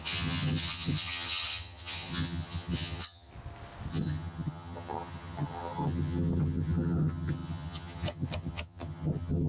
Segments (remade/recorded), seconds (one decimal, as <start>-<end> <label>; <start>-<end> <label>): 0.0-3.3 remade; 3.3-3.9 recorded; 3.9-9.5 remade